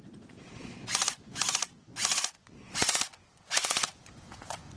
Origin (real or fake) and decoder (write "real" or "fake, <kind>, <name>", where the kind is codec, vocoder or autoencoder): fake, vocoder, Vocos